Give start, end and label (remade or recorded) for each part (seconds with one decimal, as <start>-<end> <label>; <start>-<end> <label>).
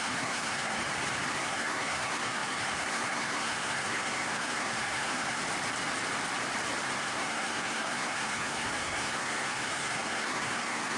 0.0-0.8 remade; 0.8-1.3 recorded; 1.3-5.4 remade; 5.4-7.0 recorded; 7.0-11.0 remade